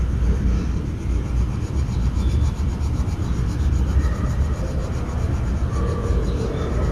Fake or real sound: real